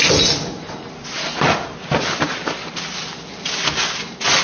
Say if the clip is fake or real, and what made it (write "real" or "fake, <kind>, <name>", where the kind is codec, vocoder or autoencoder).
real